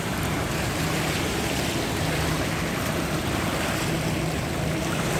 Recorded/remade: remade